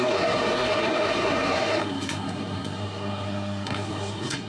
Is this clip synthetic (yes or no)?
yes